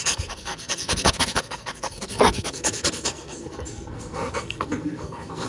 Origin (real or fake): fake